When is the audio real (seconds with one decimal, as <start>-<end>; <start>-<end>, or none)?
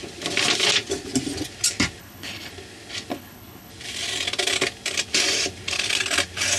0.0-2.0; 2.5-3.1; 3.7-6.6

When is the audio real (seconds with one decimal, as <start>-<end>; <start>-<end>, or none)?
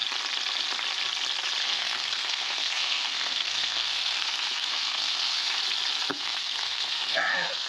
0.0-1.6; 5.6-6.1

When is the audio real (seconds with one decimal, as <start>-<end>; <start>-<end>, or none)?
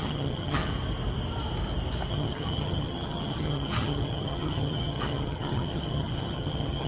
0.7-2.1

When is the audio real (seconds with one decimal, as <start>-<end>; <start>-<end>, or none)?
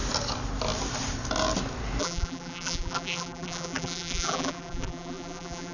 0.0-2.0